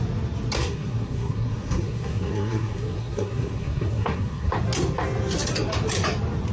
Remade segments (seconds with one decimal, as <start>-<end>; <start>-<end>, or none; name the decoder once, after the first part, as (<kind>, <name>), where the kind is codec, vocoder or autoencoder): 0.6-4.5 (codec, SNAC)